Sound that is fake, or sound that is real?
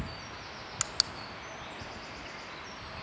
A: real